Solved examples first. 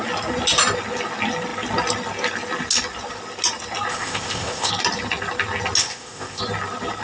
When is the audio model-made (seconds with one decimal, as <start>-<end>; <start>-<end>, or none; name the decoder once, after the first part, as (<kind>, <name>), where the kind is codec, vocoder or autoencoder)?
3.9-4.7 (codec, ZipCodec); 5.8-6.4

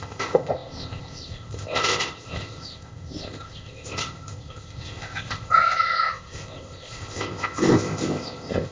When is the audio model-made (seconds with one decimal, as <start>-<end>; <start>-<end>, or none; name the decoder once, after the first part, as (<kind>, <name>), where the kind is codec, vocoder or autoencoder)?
0.0-8.7 (codec, ZipCodec)

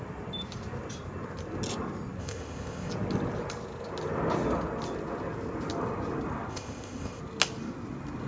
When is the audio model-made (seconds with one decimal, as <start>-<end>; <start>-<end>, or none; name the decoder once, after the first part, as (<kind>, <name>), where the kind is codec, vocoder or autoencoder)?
2.2-2.9 (codec, ZipCodec); 6.5-7.2

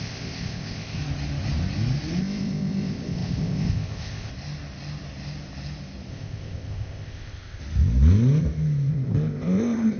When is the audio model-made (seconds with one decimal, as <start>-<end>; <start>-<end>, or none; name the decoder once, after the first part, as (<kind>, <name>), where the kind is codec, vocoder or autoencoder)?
0.0-1.0 (codec, ZipCodec); 2.2-4.3; 6.1-7.6; 8.9-10.0

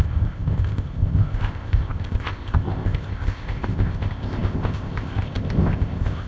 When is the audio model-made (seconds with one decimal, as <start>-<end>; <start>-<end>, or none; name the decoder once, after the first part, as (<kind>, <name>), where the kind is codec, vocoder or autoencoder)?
0.0-6.3 (codec, ZipCodec)